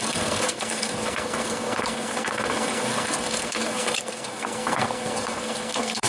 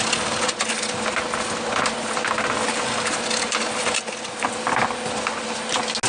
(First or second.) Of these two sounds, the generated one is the first